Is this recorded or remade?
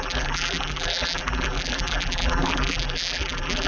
remade